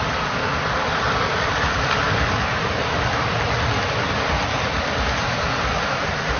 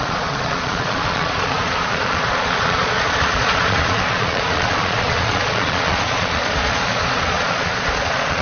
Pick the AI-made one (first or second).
second